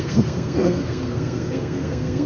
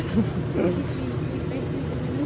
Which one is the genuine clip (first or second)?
second